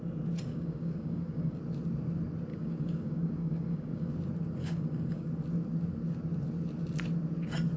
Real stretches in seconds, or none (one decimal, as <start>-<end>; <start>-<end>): 0.0-0.5; 1.6-2.5; 4.1-4.6; 5.3-7.8